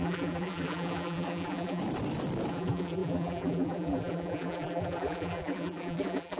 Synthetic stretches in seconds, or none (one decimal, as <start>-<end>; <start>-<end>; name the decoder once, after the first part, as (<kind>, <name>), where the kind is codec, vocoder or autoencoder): 0.0-1.8 (vocoder, BigVGAN v2); 2.5-6.4